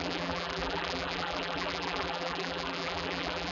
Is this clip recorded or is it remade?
remade